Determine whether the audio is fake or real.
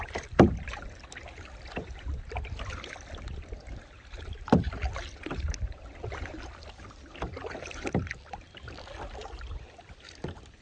fake